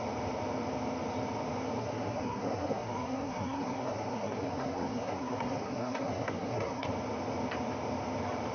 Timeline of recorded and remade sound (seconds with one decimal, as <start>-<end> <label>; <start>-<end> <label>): 0.0-1.8 recorded; 1.8-6.9 remade; 6.9-8.5 recorded